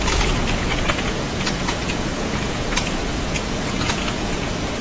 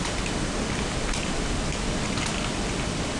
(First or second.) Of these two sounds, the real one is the second